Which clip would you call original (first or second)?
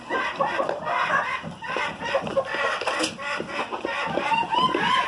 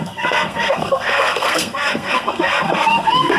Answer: first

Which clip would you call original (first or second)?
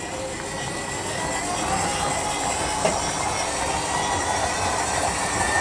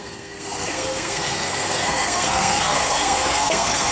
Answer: first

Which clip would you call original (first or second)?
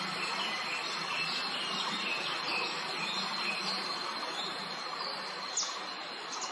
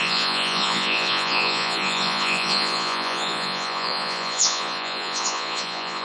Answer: first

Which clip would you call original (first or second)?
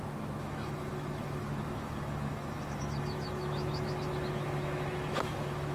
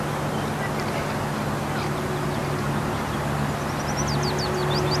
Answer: second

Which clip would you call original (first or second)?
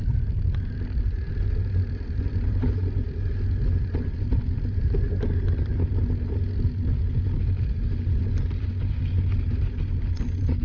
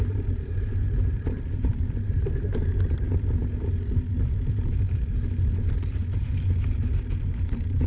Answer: first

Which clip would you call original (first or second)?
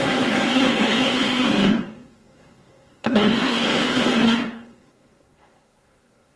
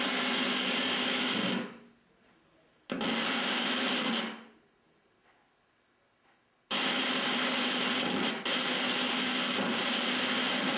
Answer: second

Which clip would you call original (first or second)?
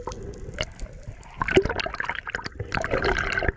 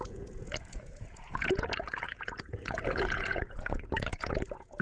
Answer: first